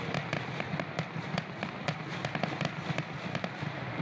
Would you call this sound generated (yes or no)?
yes